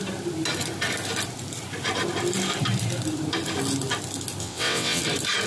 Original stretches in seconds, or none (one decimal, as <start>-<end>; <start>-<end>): 0.0-4.4; 5.0-5.5